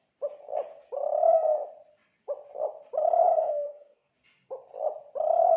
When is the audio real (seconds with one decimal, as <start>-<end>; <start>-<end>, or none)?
0.0-3.4; 4.1-5.6